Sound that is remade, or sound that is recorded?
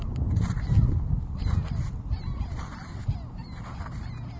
recorded